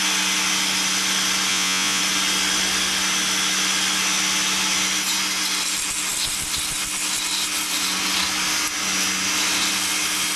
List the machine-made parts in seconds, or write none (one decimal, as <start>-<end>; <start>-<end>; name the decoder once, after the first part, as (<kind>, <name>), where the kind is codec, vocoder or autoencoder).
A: 1.5-2.0 (vocoder, Vocos)